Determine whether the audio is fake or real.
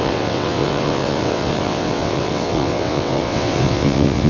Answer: fake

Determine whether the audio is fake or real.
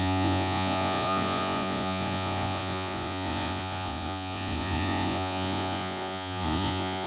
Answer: fake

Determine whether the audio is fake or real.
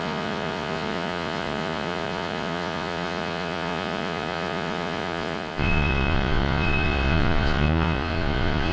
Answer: fake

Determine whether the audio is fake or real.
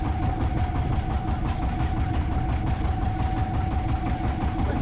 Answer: real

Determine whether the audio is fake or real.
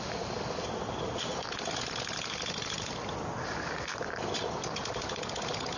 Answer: real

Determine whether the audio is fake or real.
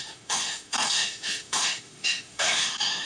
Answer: fake